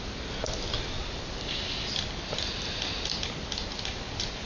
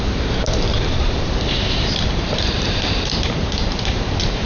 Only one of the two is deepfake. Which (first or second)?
second